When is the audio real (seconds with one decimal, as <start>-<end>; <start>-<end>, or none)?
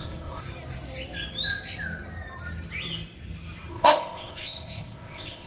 0.4-3.7